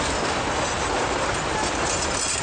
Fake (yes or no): no